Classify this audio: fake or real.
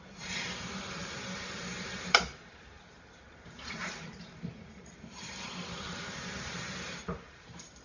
fake